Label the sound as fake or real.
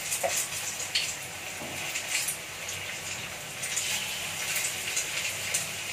real